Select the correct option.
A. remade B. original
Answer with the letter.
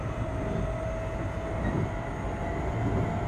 B